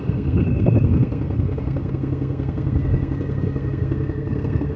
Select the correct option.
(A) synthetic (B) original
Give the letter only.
A